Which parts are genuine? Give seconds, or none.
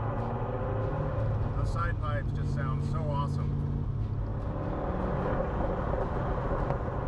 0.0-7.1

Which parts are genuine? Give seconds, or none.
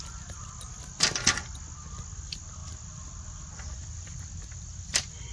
0.0-5.3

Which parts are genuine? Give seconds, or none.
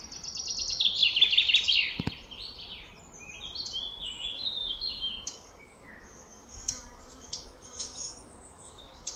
0.0-3.9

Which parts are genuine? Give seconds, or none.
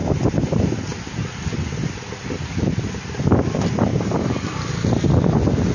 0.0-3.9; 4.7-5.7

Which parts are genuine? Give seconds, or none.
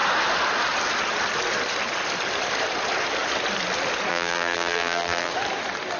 0.0-4.1; 5.3-6.0